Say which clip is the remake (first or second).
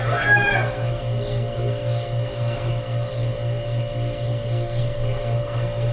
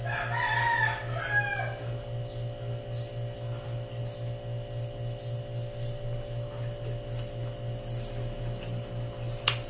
first